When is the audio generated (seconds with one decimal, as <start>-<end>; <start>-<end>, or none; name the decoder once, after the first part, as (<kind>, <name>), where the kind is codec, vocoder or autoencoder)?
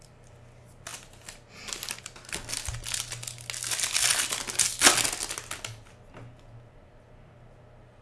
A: none